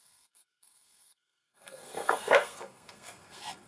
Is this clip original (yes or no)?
no